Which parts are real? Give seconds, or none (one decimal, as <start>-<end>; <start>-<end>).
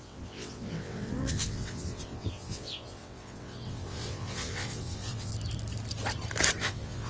5.3-6.6